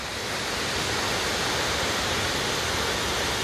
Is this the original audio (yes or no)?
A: yes